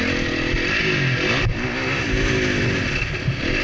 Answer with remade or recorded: recorded